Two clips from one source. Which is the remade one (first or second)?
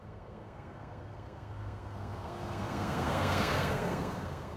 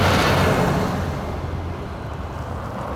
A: first